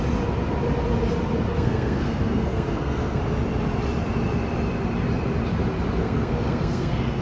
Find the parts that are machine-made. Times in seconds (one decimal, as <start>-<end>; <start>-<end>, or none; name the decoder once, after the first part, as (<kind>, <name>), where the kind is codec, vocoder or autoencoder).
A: 1.5-3.2 (codec, SNAC); 6.0-7.2